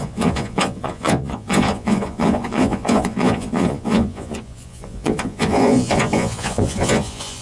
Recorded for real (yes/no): no